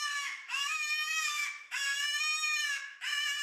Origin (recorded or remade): remade